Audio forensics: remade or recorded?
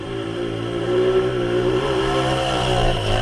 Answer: remade